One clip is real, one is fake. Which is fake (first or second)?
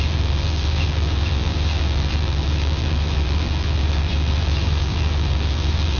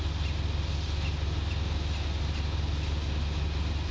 first